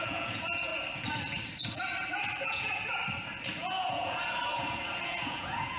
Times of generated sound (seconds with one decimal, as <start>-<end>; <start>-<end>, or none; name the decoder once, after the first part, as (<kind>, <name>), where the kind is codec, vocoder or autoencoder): 0.0-0.7 (vocoder, Vocos); 2.4-3.0; 3.5-5.8